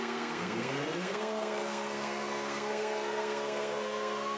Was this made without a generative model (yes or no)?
no